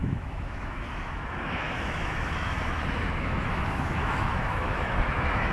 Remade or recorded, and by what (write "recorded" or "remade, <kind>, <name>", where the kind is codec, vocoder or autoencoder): remade, autoencoder, DAC-VAE